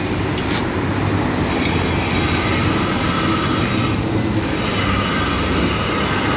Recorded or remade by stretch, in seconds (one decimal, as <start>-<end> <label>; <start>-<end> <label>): 0.0-6.4 recorded